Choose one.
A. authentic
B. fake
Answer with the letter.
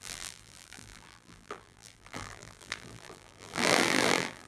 B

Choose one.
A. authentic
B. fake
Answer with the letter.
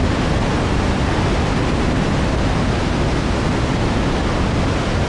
A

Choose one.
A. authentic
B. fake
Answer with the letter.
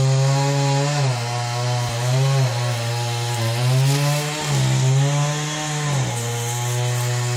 A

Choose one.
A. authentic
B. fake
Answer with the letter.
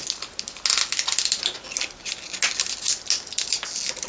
A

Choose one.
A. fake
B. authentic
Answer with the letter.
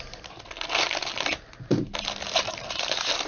A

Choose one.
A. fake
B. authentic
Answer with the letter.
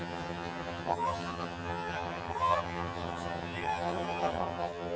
A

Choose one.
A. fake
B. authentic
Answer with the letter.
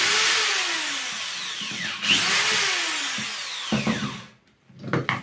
B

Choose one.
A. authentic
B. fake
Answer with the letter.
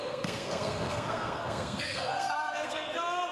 B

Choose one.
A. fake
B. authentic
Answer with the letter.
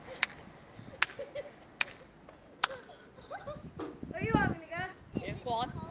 B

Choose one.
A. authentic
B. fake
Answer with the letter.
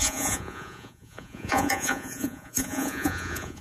B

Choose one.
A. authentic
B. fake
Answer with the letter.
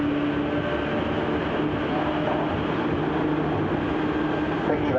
A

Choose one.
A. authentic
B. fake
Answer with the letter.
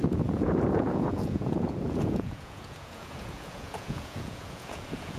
B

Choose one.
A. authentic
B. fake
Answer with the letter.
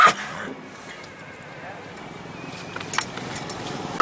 A